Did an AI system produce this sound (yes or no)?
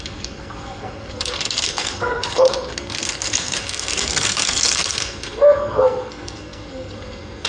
yes